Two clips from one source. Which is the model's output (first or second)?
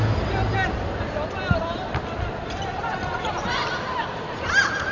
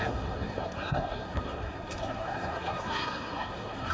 second